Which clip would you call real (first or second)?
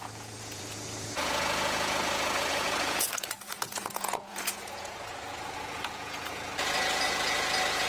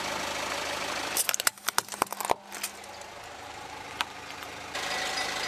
second